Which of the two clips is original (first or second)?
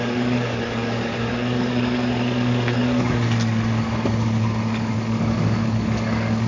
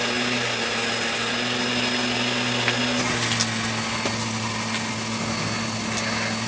second